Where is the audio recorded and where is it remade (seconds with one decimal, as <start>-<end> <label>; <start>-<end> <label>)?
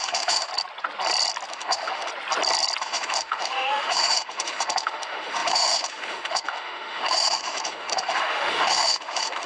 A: 0.0-0.5 remade; 0.5-1.5 recorded; 1.5-2.1 remade; 2.1-2.8 recorded; 2.8-9.5 remade